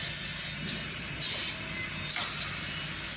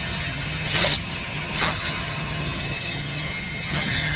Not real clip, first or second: second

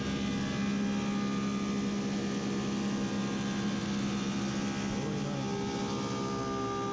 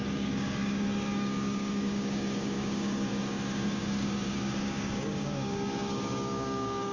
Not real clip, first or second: second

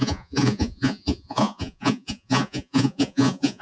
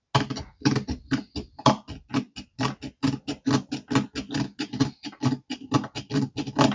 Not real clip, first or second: first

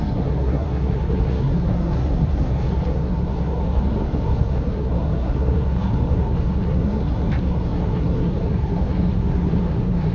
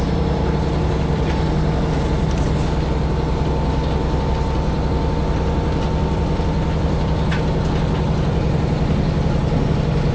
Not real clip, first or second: first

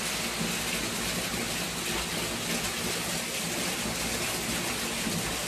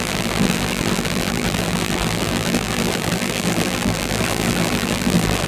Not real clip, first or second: second